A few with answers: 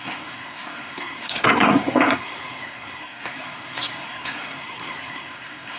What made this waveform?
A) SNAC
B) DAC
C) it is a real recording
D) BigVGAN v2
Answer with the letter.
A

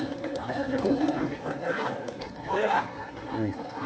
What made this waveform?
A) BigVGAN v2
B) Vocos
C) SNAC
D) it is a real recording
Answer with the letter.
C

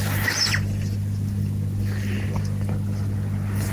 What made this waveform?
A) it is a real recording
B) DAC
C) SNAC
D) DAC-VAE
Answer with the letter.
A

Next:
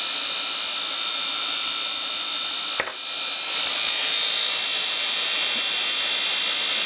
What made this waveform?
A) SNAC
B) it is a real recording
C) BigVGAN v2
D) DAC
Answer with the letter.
B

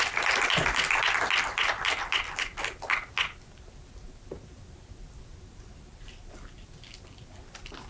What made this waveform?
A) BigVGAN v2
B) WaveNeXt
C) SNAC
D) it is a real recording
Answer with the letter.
D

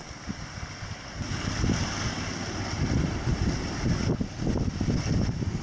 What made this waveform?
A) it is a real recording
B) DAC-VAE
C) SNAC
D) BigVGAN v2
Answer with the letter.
A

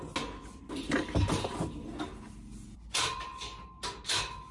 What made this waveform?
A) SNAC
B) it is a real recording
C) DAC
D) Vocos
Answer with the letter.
B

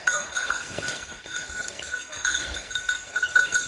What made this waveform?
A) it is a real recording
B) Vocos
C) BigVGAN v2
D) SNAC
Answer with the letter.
D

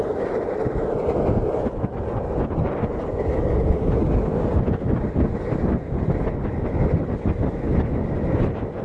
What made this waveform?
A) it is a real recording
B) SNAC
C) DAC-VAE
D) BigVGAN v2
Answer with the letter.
A